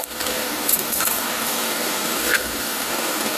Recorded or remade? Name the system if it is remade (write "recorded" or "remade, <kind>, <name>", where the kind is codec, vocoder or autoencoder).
remade, codec, DAC